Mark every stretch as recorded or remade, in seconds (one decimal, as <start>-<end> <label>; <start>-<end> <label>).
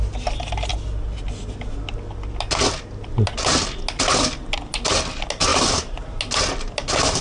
0.0-5.5 recorded; 5.5-6.2 remade; 6.2-7.2 recorded